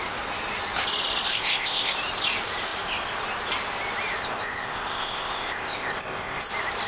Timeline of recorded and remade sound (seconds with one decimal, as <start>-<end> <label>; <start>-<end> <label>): 0.0-1.3 recorded; 1.3-1.9 remade; 1.9-4.2 recorded; 4.2-6.4 remade; 6.4-6.9 recorded